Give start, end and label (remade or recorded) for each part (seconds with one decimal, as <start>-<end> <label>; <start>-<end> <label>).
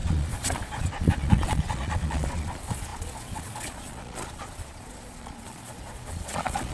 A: 0.0-6.7 remade